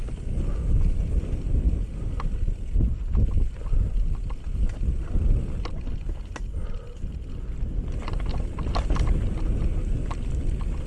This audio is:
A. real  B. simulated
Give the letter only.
A